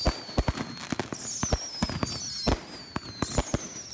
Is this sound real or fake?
real